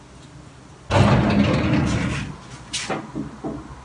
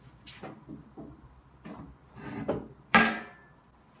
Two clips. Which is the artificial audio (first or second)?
second